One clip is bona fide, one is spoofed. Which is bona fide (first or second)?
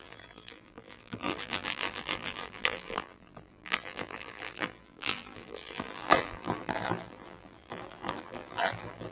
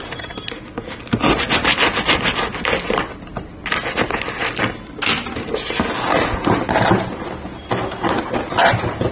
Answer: second